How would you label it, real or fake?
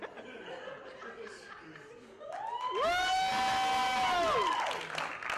real